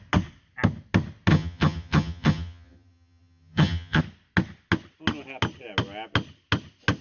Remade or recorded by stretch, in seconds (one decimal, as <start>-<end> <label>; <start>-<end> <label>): 0.0-1.3 recorded; 1.3-4.0 remade; 4.0-7.0 recorded